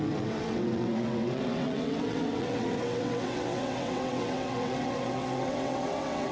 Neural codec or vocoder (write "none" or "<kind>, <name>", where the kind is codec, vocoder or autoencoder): vocoder, WaveNeXt